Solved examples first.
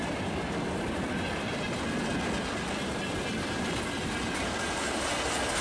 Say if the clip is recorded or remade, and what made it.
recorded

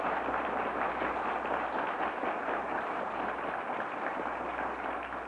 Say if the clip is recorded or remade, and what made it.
recorded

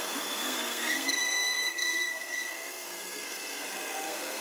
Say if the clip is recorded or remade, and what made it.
remade, codec, SNAC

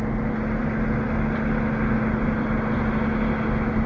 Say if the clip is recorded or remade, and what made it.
recorded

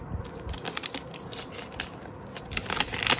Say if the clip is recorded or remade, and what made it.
recorded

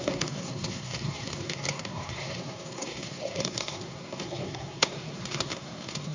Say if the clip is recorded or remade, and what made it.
remade, codec, SNAC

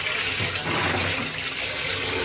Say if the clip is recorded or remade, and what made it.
recorded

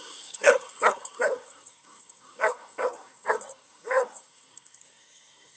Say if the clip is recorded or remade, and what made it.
remade, codec, SNAC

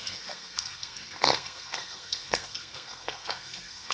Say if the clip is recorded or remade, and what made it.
remade, codec, SNAC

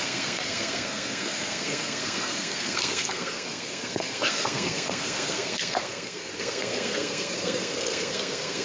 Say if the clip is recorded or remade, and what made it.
remade, codec, SNAC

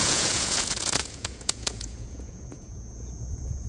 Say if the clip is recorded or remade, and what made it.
remade, vocoder, Vocos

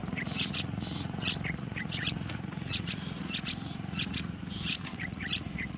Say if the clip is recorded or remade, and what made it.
remade, vocoder, Vocos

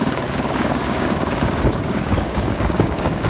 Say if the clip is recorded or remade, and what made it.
remade, codec, DAC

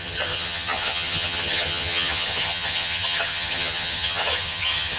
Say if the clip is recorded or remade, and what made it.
remade, vocoder, HiFi-GAN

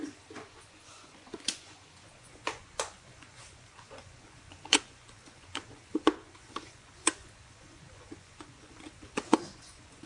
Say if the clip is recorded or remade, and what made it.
remade, vocoder, Vocos